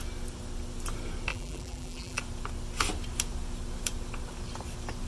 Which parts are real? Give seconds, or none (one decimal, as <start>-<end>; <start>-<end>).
0.0-1.3; 2.2-5.1